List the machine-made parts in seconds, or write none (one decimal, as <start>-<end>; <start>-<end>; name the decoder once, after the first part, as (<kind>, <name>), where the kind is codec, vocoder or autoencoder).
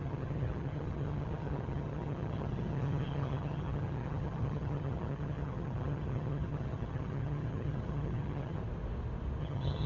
0.0-8.6 (vocoder, HiFi-GAN); 9.4-9.9